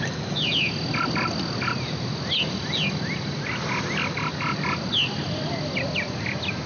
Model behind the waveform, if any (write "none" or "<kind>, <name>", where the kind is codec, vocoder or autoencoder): none